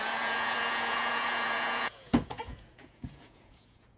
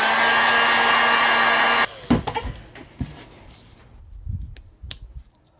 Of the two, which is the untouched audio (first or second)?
second